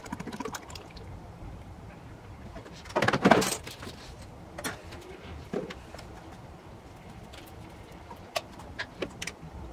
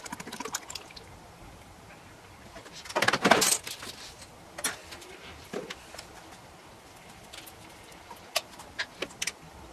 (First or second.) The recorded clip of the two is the second